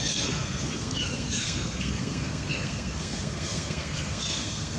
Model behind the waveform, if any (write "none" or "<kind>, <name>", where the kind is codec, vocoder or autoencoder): codec, SNAC